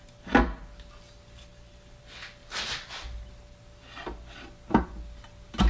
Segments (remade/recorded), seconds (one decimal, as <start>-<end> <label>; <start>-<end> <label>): 0.0-5.7 recorded

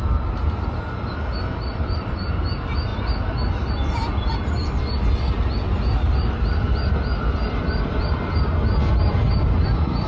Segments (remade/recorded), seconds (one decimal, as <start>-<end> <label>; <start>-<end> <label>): 0.0-10.1 recorded

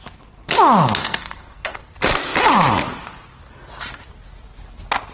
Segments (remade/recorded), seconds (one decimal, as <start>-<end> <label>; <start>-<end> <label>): 0.0-1.0 recorded; 1.0-1.8 remade; 1.8-5.1 recorded

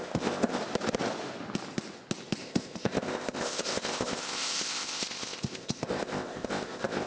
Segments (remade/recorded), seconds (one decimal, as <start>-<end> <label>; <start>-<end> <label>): 0.0-0.6 remade; 0.6-2.4 recorded; 2.4-7.1 remade

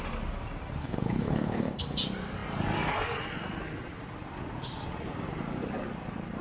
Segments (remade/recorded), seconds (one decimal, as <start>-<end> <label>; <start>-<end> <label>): 0.0-0.8 recorded; 0.8-1.8 remade; 1.8-6.4 recorded

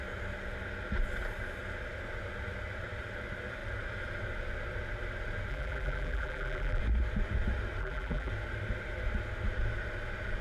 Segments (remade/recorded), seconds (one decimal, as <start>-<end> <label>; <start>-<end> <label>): 0.0-5.5 recorded; 5.5-6.8 remade; 6.8-7.8 recorded; 7.8-8.3 remade; 8.3-10.4 recorded